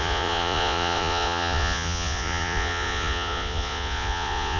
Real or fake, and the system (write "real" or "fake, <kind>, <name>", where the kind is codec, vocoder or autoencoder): fake, vocoder, Vocos